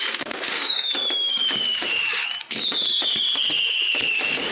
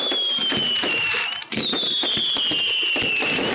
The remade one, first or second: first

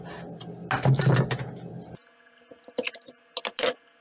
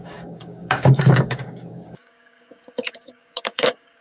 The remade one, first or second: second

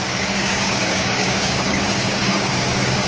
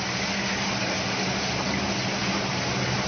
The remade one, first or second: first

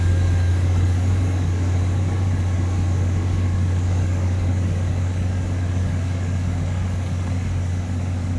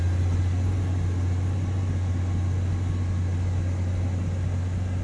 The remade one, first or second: first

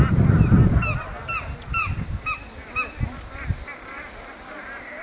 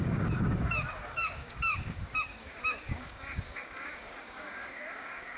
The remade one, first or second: second